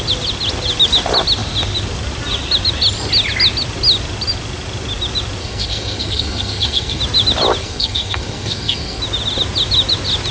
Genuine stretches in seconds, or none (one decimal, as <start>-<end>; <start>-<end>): 0.0-5.4; 7.0-7.6; 9.0-10.3